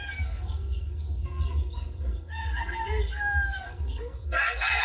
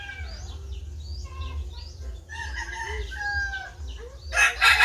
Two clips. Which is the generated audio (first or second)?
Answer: first